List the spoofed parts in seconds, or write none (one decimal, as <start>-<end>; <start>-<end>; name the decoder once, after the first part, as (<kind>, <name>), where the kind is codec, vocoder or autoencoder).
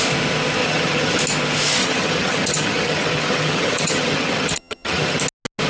0.6-1.2 (vocoder, HiFi-GAN); 1.8-5.2